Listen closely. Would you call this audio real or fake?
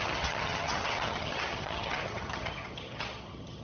fake